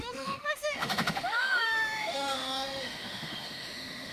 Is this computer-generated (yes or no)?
yes